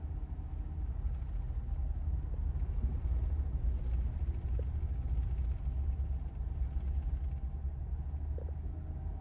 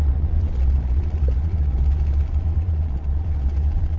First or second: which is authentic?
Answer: first